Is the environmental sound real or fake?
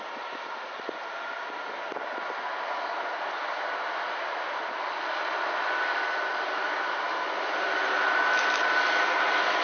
real